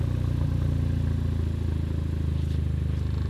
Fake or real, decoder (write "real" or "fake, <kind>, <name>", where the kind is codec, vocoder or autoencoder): real